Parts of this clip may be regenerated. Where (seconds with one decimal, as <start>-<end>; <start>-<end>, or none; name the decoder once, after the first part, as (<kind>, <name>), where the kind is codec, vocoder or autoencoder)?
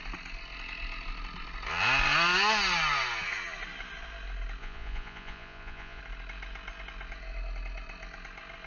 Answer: 4.6-6.0 (vocoder, Vocos)